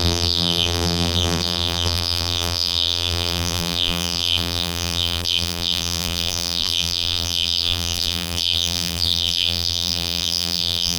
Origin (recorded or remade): remade